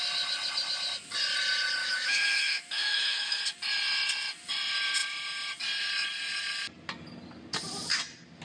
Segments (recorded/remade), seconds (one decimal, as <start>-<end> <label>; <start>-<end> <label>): 0.0-1.8 recorded; 1.8-3.4 remade; 3.4-8.4 recorded